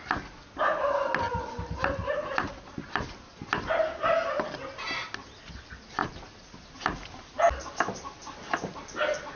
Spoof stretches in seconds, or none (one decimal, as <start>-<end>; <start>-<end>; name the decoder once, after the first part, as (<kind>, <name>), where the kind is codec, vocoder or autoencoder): none